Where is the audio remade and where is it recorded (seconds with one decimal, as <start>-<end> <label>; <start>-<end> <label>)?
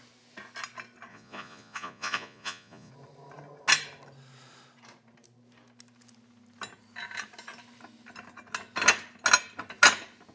0.0-1.1 recorded; 1.1-2.9 remade; 2.9-10.3 recorded